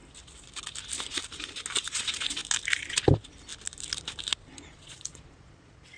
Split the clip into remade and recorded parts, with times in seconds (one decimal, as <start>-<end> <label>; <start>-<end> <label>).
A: 0.0-4.7 recorded; 4.7-6.0 remade